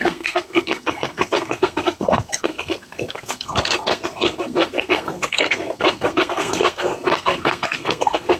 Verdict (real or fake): fake